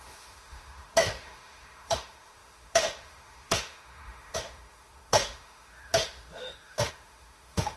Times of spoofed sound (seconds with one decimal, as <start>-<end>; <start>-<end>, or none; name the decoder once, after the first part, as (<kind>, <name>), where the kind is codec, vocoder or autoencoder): 0.0-7.8 (autoencoder, DAC-VAE)